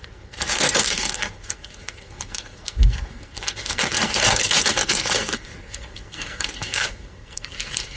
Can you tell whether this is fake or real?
fake